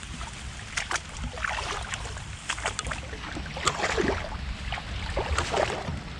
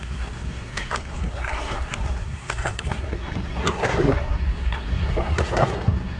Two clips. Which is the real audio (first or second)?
first